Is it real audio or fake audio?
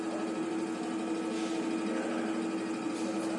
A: real